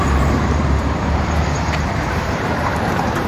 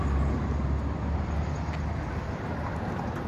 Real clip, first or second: second